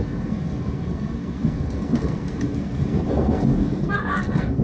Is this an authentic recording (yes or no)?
no